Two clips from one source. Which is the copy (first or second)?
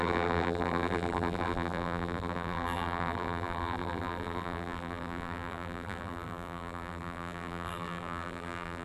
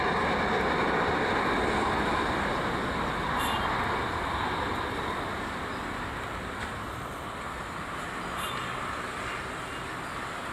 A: first